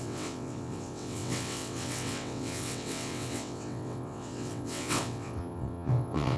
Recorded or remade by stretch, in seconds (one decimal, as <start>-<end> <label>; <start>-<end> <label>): 0.0-6.4 remade